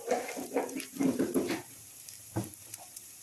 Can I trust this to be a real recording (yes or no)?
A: no